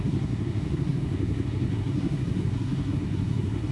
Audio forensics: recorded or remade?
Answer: remade